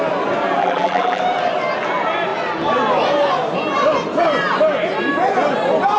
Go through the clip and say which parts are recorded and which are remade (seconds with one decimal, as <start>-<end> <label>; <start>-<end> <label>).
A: 0.0-0.6 recorded; 0.6-1.2 remade; 1.2-6.0 recorded